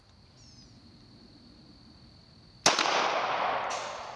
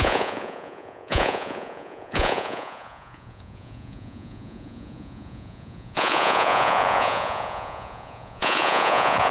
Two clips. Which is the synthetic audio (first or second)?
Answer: second